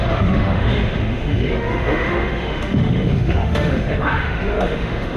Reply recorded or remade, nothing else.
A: remade